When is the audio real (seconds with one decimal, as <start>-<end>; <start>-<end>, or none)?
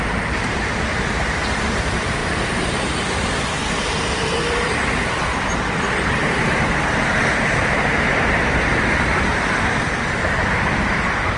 none